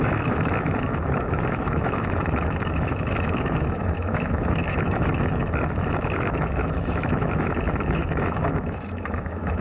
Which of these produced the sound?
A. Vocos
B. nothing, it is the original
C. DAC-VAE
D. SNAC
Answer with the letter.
C